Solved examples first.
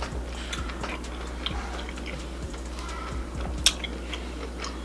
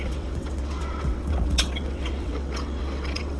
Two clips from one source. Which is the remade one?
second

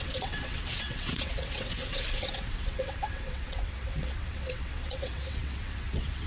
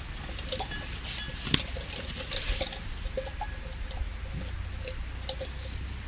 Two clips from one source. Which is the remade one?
first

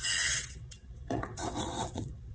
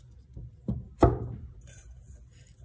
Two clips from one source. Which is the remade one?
first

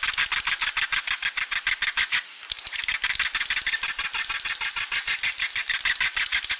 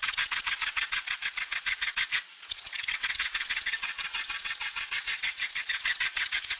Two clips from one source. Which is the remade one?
second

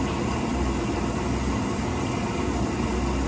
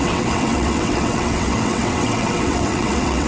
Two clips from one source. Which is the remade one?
second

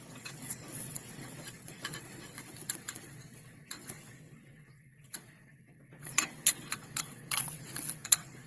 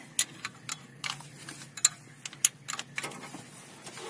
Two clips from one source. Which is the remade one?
first